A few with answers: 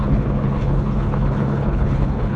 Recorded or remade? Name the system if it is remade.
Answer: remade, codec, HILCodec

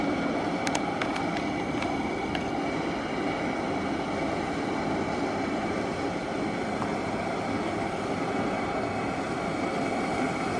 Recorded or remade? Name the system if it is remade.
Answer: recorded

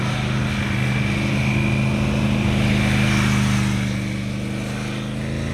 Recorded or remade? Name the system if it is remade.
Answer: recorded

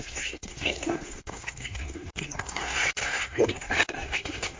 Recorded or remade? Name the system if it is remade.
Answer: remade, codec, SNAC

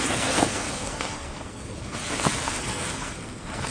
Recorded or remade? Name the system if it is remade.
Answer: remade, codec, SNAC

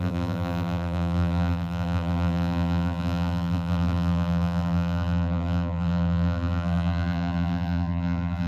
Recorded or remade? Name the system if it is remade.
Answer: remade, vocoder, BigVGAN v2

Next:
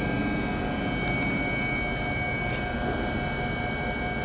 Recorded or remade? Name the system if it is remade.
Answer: recorded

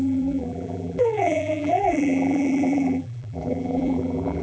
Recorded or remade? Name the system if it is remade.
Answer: remade, vocoder, BigVGAN v2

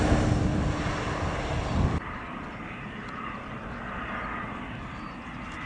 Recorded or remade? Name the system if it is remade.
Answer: recorded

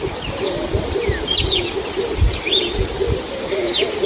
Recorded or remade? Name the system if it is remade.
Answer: recorded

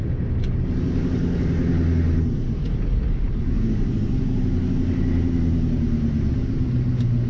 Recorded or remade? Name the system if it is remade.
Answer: recorded